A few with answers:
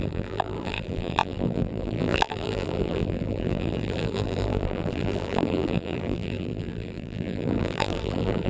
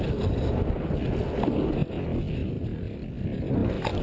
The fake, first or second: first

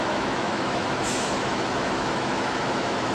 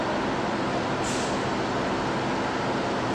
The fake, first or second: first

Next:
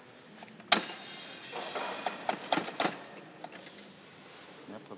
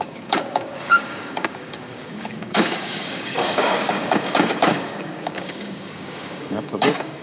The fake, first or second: second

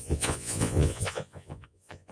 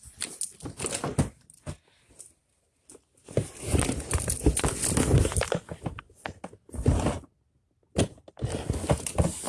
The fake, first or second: first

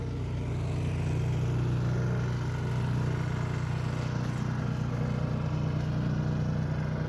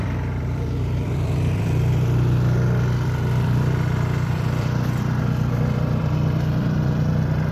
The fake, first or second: second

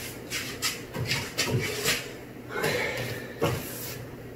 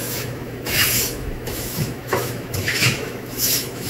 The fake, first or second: second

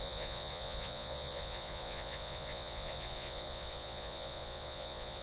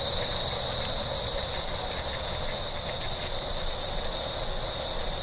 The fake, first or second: first